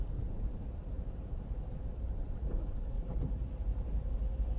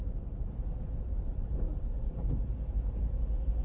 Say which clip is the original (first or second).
second